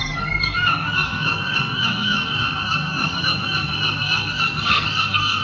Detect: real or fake fake